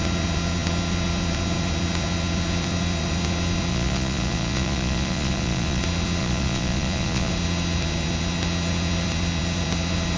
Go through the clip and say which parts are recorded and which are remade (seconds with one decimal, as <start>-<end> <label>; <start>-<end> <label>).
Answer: 0.0-3.7 recorded; 3.7-5.8 remade; 5.8-6.2 recorded; 6.2-7.3 remade; 7.3-10.2 recorded